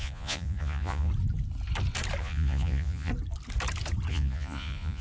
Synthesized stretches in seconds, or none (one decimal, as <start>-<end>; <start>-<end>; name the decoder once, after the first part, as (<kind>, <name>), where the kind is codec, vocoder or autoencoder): 0.0-1.1 (vocoder, Vocos); 2.2-3.1; 4.1-5.0